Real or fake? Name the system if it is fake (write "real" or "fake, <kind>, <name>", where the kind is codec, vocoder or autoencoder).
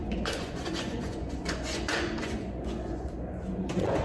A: fake, vocoder, Vocos